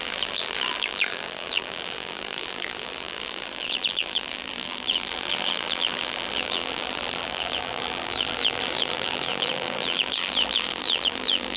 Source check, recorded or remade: remade